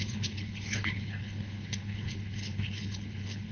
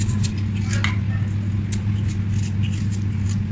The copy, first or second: first